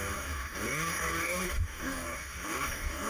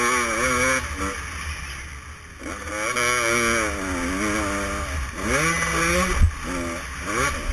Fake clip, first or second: first